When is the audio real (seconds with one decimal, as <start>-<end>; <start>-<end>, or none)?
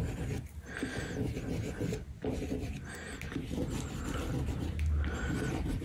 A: 1.0-4.5